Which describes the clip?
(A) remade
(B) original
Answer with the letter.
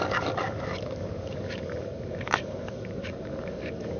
A